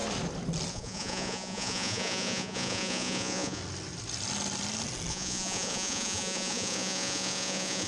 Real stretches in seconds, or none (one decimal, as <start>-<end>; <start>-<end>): 0.0-0.7; 3.6-5.1